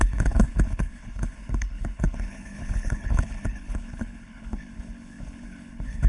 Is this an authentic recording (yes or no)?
no